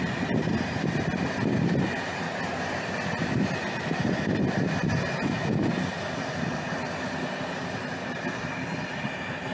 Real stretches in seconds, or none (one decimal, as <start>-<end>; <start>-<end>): 0.0-5.9; 8.3-9.5